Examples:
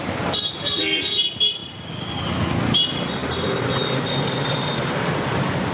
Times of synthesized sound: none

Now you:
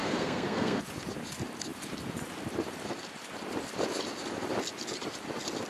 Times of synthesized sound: 0.0-0.8 (codec, SNAC)

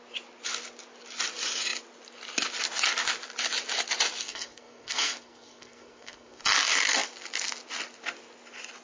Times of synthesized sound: 4.2-6.4 (codec, SNAC)

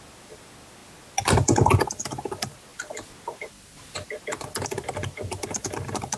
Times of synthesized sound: none

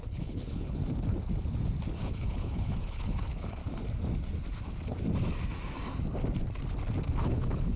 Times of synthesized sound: 0.0-0.8 (codec, HILCodec); 1.9-3.6; 7.2-7.8

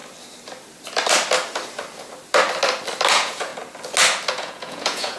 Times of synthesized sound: 3.1-3.5 (vocoder, Vocos); 4.3-5.2